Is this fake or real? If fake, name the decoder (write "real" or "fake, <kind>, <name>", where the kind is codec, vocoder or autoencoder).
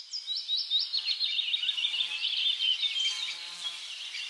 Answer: real